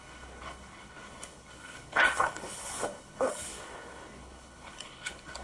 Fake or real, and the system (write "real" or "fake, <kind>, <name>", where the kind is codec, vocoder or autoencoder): fake, codec, HILCodec